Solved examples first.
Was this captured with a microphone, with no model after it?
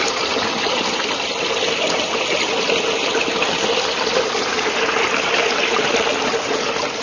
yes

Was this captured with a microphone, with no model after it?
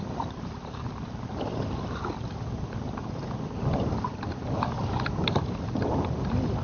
no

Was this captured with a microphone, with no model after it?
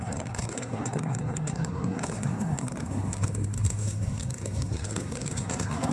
no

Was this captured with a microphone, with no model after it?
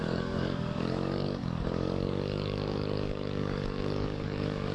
no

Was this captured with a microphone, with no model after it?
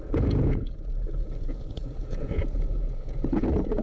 no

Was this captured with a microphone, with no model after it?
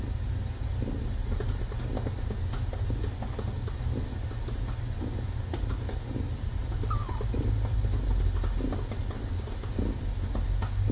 yes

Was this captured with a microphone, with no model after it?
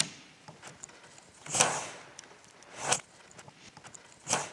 yes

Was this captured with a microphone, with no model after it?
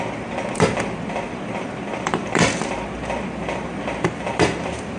no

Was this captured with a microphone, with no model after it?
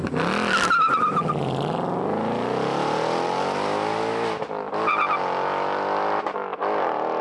yes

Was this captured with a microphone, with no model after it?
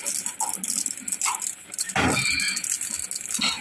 yes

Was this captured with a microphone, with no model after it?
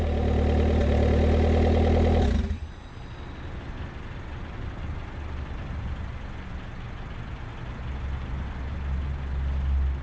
yes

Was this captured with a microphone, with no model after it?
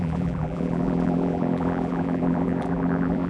no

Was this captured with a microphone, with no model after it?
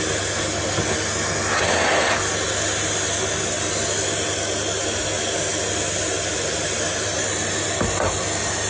yes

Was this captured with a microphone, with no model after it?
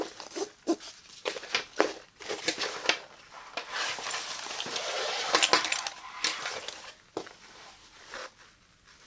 yes